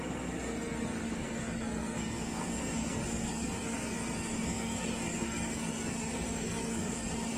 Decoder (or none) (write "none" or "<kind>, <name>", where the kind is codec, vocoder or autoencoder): codec, SNAC